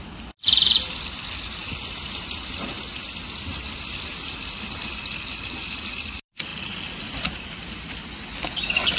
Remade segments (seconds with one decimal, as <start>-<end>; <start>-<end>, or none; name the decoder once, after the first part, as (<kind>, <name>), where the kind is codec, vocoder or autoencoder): none